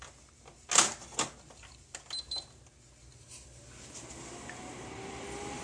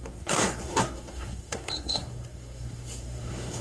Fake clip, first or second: second